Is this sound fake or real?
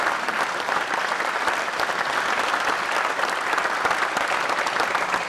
real